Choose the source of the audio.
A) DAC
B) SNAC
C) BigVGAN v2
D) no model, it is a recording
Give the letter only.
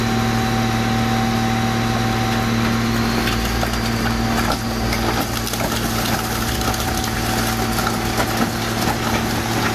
D